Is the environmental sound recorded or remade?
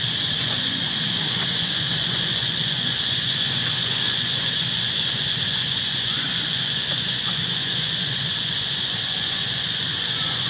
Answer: remade